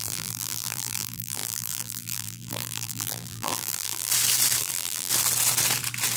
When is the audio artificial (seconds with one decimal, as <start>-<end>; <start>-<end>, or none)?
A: 0.0-4.1; 4.6-5.1